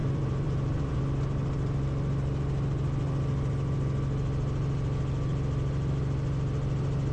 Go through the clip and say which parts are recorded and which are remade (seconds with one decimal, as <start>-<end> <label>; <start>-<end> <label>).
0.0-1.0 remade; 1.0-7.1 recorded